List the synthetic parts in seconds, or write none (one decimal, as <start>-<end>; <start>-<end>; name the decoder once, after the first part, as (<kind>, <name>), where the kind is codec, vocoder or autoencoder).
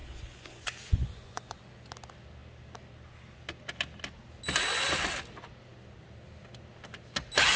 0.0-1.7 (vocoder, Vocos)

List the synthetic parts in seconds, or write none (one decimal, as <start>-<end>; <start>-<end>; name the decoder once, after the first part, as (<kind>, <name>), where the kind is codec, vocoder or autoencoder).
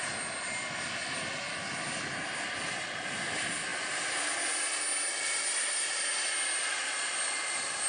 none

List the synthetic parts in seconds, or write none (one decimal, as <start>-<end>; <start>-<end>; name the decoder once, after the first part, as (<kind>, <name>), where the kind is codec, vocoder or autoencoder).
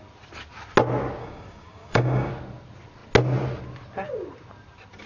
1.2-2.3 (codec, DAC)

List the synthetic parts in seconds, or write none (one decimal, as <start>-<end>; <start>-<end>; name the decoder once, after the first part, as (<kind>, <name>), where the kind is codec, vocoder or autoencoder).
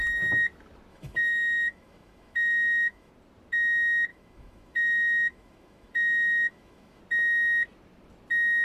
0.9-3.1 (autoencoder, DAC-VAE); 4.1-7.0